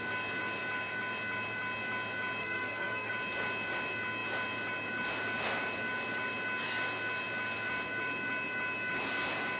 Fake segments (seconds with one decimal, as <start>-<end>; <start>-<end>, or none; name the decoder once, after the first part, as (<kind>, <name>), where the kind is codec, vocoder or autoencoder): 2.4-3.1 (codec, SNAC)